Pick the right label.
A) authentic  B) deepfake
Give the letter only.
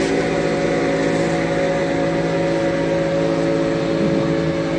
A